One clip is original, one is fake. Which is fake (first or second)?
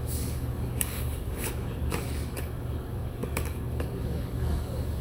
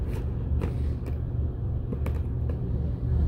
first